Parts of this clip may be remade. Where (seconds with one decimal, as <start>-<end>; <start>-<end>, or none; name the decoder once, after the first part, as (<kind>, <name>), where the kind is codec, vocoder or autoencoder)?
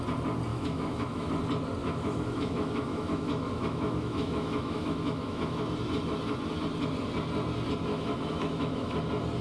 0.5-1.3 (autoencoder, DAC-VAE); 1.8-5.6; 7.9-9.0